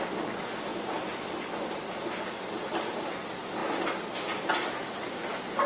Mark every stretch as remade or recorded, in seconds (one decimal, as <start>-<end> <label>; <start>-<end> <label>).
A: 0.0-5.7 recorded